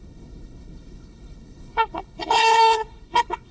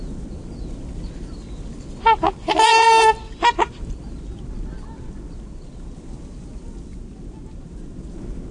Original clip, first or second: second